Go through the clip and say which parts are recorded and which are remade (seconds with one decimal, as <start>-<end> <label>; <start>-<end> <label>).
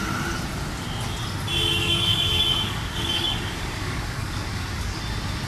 0.0-1.7 recorded; 1.7-5.0 remade; 5.0-5.5 recorded